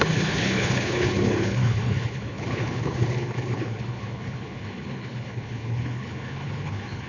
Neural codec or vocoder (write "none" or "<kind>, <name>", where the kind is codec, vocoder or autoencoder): codec, HILCodec